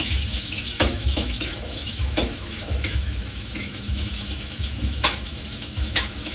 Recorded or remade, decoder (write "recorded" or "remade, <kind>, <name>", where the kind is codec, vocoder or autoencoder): remade, autoencoder, DAC-VAE